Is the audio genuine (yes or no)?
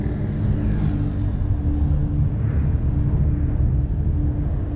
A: yes